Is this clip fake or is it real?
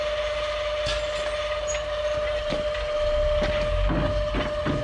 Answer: real